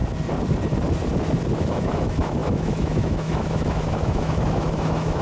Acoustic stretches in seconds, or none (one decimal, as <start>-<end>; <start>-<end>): 0.0-1.6